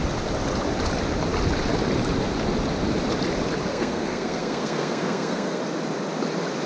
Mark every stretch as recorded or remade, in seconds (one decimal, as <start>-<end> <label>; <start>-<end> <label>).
0.0-3.7 recorded; 3.7-5.6 remade; 5.6-6.7 recorded